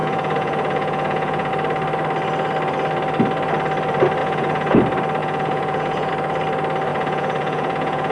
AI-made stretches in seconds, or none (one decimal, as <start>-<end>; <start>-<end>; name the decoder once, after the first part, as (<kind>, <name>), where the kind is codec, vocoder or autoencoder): 0.0-1.5 (vocoder, Vocos); 4.2-4.8; 5.2-6.1; 6.9-8.1